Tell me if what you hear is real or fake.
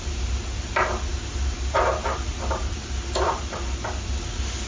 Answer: real